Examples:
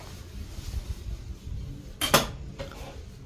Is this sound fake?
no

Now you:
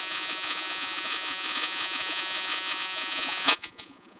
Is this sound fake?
yes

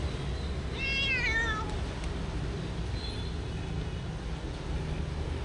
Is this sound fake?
no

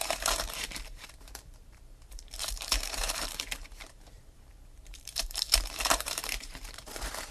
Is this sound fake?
yes